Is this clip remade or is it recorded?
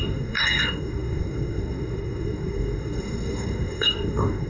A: remade